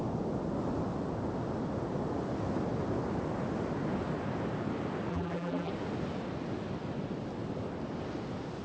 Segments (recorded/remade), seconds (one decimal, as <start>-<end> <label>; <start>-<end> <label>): 0.0-5.1 recorded; 5.1-5.7 remade; 5.7-8.6 recorded